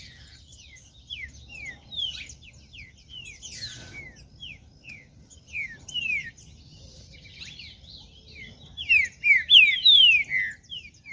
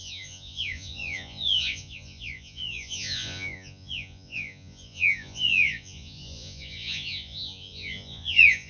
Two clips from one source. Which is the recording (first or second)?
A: first